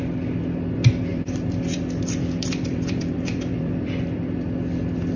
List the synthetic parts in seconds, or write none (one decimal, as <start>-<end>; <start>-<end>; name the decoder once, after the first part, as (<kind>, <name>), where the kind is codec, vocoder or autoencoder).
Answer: 1.1-4.2 (vocoder, BigVGAN v2)